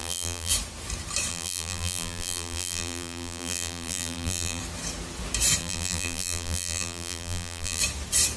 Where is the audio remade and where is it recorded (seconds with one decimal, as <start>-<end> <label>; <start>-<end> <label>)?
0.0-0.5 remade; 0.5-1.3 recorded; 1.3-4.6 remade; 4.6-5.6 recorded; 5.6-7.8 remade; 7.8-8.4 recorded